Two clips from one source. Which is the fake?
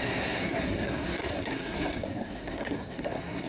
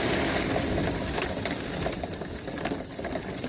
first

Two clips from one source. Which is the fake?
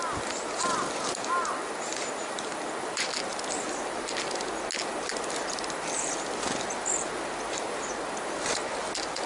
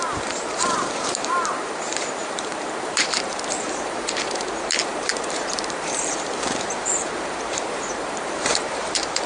second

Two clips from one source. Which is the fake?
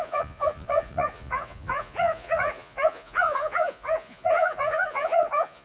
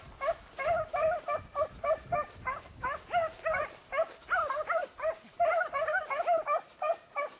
first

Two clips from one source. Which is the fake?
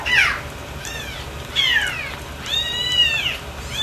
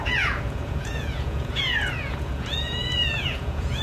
second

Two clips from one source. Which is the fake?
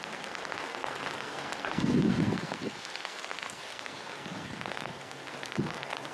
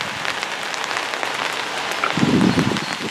first